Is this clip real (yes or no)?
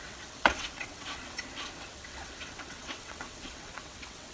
no